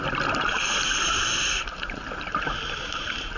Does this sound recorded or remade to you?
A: recorded